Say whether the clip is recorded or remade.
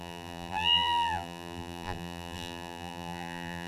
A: remade